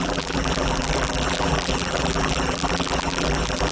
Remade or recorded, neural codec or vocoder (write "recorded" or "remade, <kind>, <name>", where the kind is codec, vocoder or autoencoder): remade, vocoder, BigVGAN v2